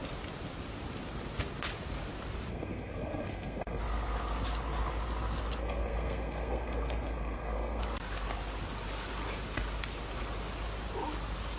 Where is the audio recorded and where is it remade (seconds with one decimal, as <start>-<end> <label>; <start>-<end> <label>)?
0.0-2.5 recorded; 2.5-3.8 remade; 3.8-5.6 recorded; 5.6-7.8 remade; 7.8-11.6 recorded